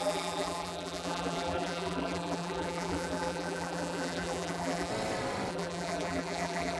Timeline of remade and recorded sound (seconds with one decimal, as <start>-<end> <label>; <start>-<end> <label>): 0.0-4.9 remade; 4.9-5.5 recorded; 5.5-6.8 remade